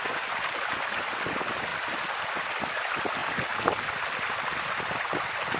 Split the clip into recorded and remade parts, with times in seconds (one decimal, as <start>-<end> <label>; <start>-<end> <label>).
0.0-5.6 recorded